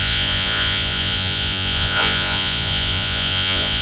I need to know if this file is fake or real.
fake